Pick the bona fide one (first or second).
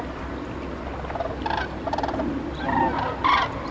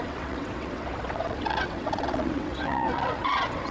first